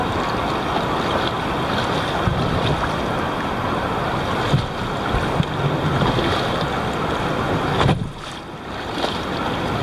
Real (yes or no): yes